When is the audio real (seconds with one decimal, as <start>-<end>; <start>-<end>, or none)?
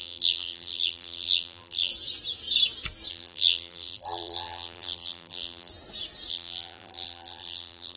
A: 1.9-3.1; 5.7-6.3